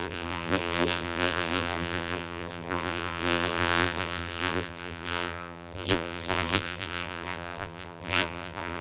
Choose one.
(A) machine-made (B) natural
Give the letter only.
A